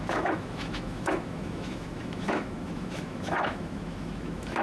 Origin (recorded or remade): remade